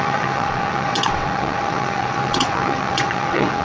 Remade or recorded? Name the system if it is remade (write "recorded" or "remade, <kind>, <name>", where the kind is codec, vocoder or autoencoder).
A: remade, vocoder, WaveNeXt